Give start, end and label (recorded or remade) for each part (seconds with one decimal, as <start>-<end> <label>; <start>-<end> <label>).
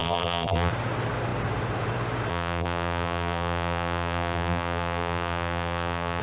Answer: 0.0-0.7 remade; 0.7-2.3 recorded; 2.3-6.2 remade